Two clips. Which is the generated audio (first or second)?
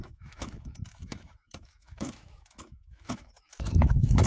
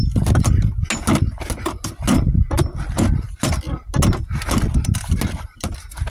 first